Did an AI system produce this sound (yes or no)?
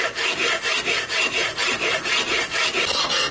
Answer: no